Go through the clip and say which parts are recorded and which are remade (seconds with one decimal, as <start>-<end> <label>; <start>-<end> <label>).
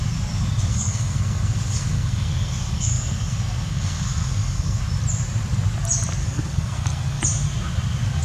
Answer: 0.0-0.7 recorded; 0.7-4.8 remade; 4.8-6.2 recorded; 6.2-7.2 remade; 7.2-8.2 recorded